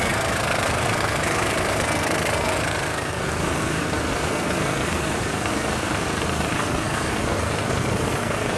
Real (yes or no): no